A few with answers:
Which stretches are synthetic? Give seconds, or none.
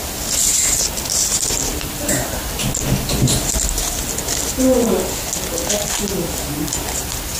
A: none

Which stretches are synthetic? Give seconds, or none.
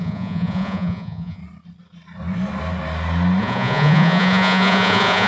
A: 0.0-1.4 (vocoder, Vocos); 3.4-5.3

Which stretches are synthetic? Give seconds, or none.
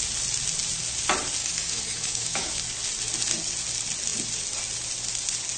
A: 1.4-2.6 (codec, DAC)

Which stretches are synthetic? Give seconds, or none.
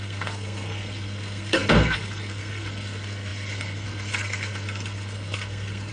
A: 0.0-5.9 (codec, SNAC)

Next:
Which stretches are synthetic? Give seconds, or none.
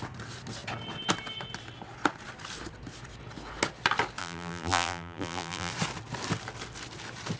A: 4.2-5.7 (vocoder, BigVGAN v2)